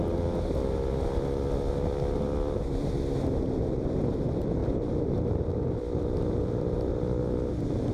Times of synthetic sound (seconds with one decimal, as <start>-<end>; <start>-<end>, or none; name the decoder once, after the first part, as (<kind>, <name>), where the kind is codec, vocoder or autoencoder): 4.6-6.4 (vocoder, BigVGAN v2); 6.9-7.5